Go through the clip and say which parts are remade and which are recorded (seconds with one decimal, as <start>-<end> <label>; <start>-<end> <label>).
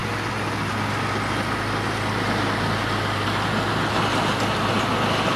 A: 0.0-5.4 recorded